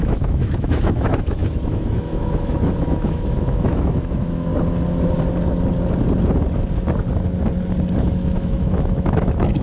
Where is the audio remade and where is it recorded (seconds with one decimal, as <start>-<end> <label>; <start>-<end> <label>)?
0.0-4.5 remade; 4.5-8.0 recorded; 8.0-9.6 remade